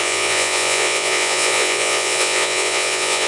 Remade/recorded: remade